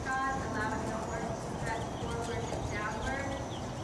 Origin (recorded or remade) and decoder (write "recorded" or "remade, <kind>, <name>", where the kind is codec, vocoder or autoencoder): recorded